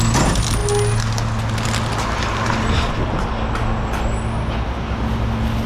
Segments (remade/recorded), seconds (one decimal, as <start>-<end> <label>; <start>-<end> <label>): 0.0-5.7 recorded